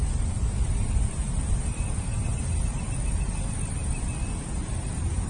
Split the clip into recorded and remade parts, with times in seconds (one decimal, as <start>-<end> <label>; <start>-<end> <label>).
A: 0.0-5.3 recorded